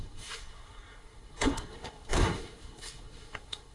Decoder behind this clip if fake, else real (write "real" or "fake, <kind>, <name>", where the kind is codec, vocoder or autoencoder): fake, codec, SNAC